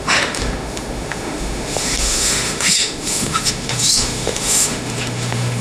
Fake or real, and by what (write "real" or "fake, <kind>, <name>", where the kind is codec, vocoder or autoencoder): fake, autoencoder, DAC-VAE